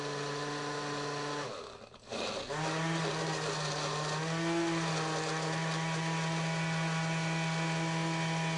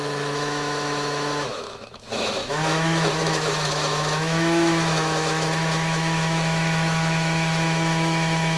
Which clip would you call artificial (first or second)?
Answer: second